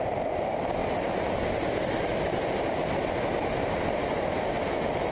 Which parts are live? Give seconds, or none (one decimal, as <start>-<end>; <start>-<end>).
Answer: 0.0-5.1